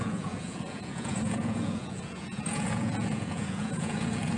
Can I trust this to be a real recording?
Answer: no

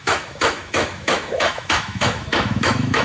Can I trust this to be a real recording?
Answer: no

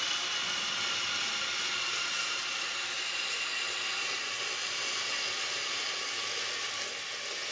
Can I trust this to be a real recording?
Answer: yes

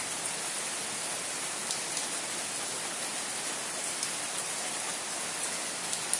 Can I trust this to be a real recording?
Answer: yes